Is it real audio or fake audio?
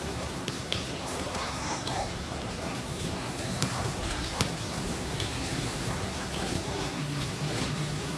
fake